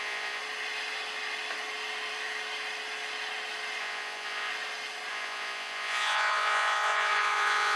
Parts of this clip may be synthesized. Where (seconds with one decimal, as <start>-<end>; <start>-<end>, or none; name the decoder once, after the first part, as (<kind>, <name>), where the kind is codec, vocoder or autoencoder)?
0.0-0.4 (vocoder, Vocos); 3.8-4.5; 5.1-7.8